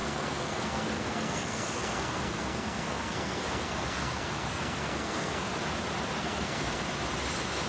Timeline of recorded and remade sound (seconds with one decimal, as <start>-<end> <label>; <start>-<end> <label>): 0.0-5.5 remade; 5.5-6.2 recorded; 6.2-6.8 remade; 6.8-7.7 recorded